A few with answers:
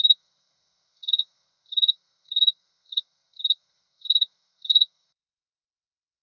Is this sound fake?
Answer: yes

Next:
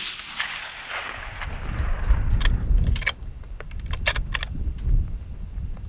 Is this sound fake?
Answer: no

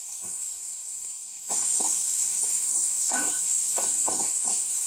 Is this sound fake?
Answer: yes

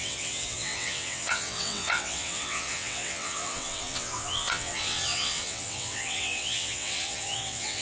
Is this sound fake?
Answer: yes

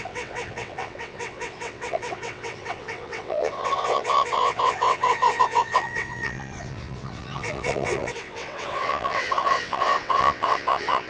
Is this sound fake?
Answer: yes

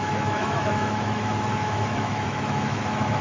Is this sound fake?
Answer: yes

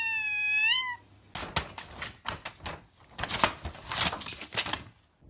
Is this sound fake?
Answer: no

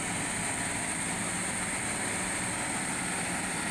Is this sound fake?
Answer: no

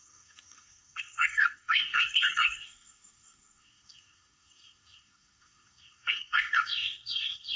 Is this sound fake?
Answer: yes